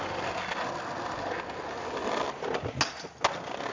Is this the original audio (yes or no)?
yes